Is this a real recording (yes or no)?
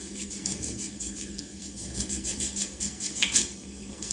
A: no